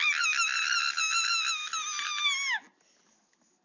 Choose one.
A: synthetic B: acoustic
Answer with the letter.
B